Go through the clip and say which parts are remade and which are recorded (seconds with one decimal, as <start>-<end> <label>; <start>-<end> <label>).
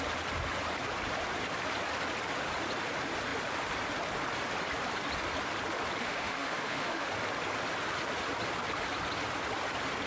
0.0-6.0 recorded; 6.0-7.1 remade; 7.1-10.1 recorded